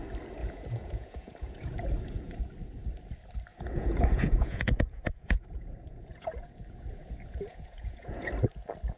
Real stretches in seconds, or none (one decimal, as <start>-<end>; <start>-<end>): 0.0-0.4; 2.4-3.5; 8.3-9.0